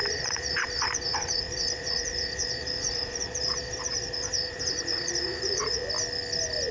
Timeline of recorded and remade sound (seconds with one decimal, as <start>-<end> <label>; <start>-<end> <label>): 0.0-5.8 remade; 5.8-6.7 recorded